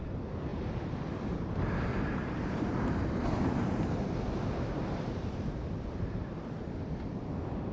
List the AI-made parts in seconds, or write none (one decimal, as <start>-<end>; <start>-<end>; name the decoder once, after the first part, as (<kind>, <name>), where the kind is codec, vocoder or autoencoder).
1.9-6.3 (vocoder, BigVGAN v2)